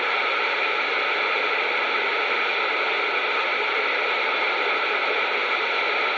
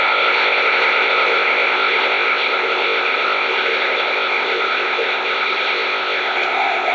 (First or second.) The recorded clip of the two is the first